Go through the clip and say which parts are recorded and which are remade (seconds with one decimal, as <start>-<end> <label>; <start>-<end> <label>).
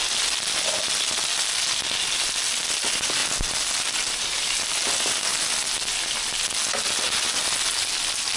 0.0-8.4 recorded